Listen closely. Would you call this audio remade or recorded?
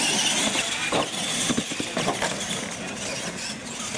recorded